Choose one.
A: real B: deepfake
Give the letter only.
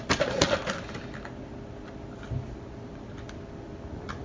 A